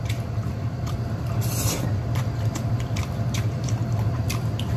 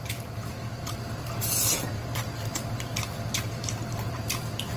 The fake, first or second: first